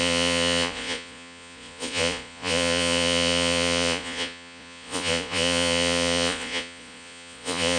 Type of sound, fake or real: fake